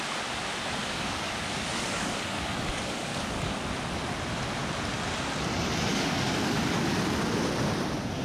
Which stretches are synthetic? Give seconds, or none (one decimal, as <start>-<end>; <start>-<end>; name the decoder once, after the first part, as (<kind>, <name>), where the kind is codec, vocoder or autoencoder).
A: 0.8-3.6 (codec, DAC); 5.9-7.0